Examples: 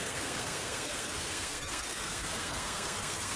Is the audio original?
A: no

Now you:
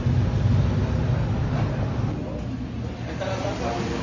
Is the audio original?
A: yes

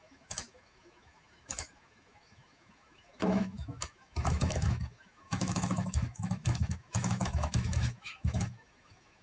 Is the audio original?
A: no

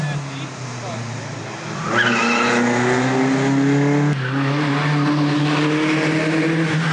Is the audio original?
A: yes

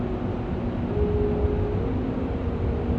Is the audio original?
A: yes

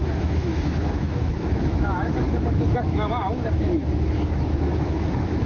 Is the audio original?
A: no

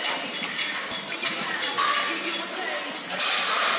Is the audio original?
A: no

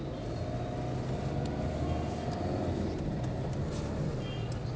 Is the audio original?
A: yes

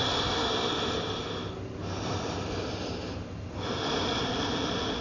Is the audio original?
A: yes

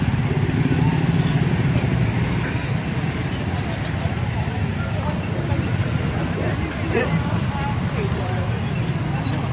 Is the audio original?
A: yes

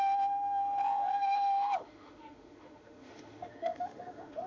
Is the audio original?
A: no